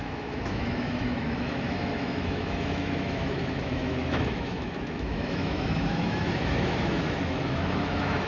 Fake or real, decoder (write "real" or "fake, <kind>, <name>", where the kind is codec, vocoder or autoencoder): fake, autoencoder, DAC-VAE